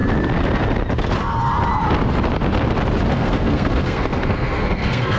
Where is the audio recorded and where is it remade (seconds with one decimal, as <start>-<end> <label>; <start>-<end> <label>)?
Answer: 0.0-3.1 recorded; 3.1-5.2 remade